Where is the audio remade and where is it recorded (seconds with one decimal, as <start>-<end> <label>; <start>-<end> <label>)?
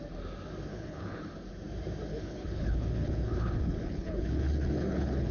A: 0.0-0.7 recorded; 0.7-1.3 remade; 1.3-2.1 recorded; 2.1-5.3 remade